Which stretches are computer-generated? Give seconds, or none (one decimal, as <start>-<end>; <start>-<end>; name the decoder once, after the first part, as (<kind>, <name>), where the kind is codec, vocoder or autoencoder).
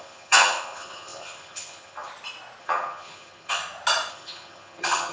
0.0-2.1 (vocoder, HiFi-GAN); 2.6-3.6; 4.1-5.1